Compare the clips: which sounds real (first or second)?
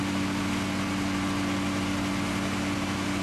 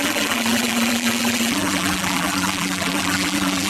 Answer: first